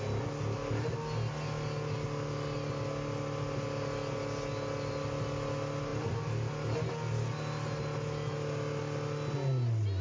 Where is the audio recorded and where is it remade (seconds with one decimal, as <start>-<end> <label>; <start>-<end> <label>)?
0.0-10.0 recorded